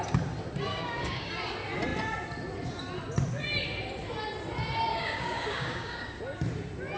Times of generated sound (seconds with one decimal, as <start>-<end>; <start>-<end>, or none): 0.7-1.3; 4.9-6.2

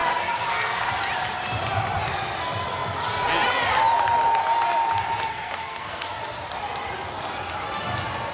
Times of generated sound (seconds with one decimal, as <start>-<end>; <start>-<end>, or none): 0.0-0.9; 5.3-6.1

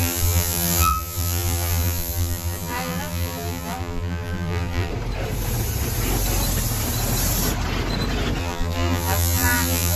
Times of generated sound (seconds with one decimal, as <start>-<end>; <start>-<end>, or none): 0.0-4.9; 8.4-10.0